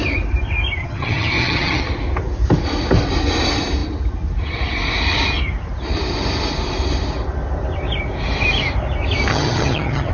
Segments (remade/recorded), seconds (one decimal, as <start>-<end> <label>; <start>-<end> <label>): 0.0-0.8 recorded; 0.8-1.8 remade; 1.8-9.3 recorded; 9.3-10.1 remade